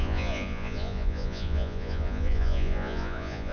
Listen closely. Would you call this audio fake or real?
fake